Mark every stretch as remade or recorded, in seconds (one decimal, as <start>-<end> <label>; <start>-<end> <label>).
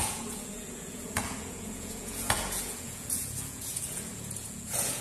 0.0-5.0 remade